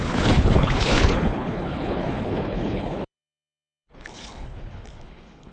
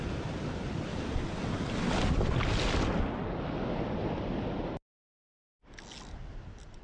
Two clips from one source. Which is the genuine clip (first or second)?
second